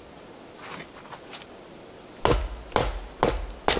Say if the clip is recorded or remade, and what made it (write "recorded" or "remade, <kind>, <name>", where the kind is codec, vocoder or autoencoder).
recorded